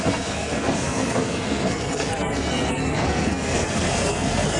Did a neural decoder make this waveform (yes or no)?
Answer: yes